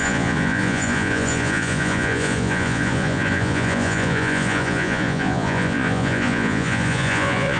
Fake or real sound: fake